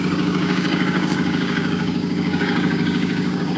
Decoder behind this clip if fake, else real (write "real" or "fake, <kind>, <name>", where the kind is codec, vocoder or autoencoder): fake, codec, DAC